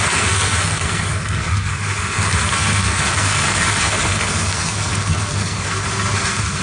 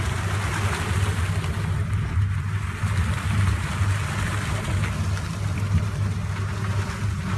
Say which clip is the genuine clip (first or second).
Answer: second